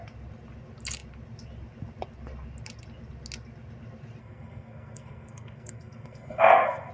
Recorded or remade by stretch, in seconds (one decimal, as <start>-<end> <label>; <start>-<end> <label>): 0.0-4.2 recorded; 4.2-6.9 remade